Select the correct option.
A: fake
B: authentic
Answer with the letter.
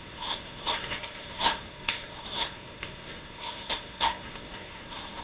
A